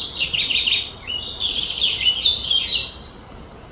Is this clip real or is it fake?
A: real